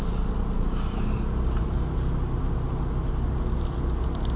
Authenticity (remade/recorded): recorded